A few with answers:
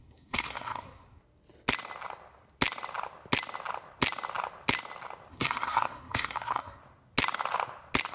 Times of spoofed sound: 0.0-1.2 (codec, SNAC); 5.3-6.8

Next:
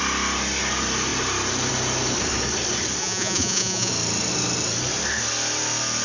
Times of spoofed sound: 3.0-3.9 (vocoder, Vocos)

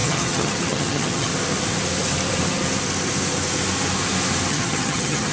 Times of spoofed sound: 0.0-1.3 (vocoder, HiFi-GAN); 4.5-5.3

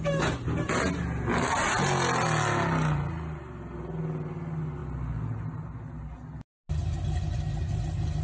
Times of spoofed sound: none

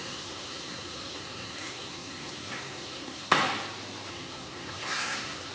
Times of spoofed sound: 0.0-3.3 (codec, SNAC); 4.1-5.5